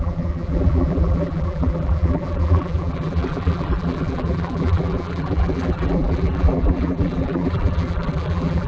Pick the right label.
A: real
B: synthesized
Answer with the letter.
B